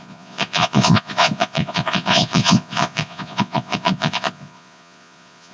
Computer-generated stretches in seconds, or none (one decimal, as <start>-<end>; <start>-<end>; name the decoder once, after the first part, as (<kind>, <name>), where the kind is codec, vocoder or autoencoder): 0.0-5.5 (vocoder, Vocos)